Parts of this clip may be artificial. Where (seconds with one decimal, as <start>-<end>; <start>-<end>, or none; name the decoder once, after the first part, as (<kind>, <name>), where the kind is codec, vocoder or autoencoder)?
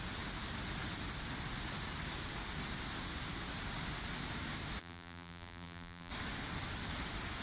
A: 4.8-6.1 (vocoder, BigVGAN v2)